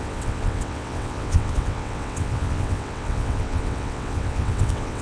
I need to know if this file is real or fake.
fake